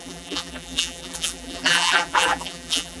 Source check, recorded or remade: remade